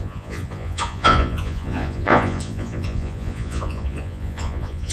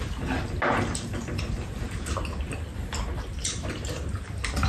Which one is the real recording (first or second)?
second